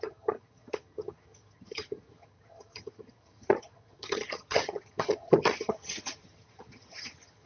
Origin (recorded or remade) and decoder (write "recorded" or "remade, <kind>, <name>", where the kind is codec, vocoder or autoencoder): remade, vocoder, HiFi-GAN